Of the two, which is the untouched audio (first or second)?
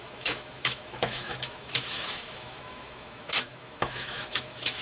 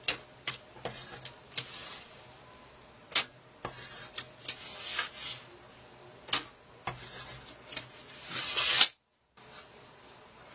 second